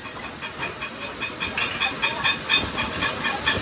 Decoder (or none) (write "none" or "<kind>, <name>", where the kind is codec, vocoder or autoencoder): none